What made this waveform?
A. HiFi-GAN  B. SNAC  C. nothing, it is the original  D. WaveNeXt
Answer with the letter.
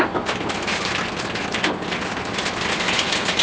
C